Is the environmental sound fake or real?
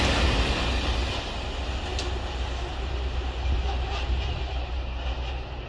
real